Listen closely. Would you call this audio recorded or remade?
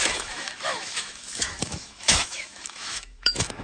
remade